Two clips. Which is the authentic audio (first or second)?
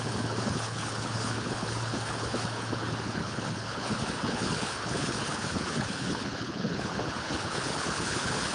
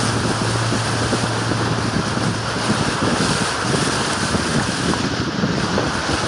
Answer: second